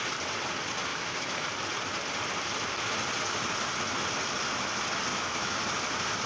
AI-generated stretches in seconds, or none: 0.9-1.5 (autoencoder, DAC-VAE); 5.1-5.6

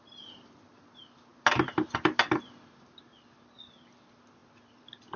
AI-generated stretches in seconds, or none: none

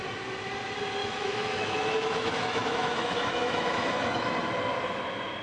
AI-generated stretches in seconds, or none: 1.0-4.2 (autoencoder, DAC-VAE)

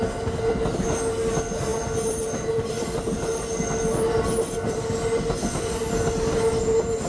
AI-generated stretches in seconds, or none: none

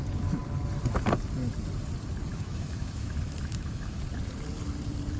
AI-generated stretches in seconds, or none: 2.3-4.0 (autoencoder, DAC-VAE)

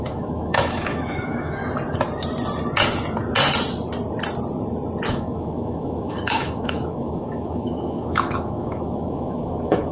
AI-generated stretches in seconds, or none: 0.0-1.6 (autoencoder, DAC-VAE); 5.1-9.9

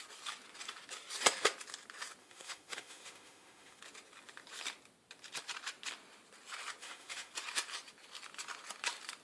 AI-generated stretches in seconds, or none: 2.2-3.8 (autoencoder, DAC-VAE); 6.8-7.3

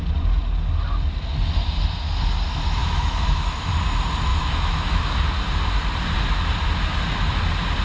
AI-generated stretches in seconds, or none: 2.8-3.7 (autoencoder, DAC-VAE); 4.3-5.1